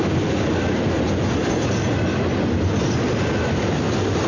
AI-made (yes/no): no